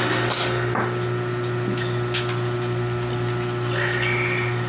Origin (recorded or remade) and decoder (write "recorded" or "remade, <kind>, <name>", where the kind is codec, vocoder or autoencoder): recorded